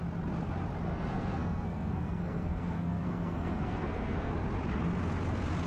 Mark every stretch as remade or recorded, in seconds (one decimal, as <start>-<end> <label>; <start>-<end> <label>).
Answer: 0.0-0.9 recorded; 0.9-4.3 remade; 4.3-5.7 recorded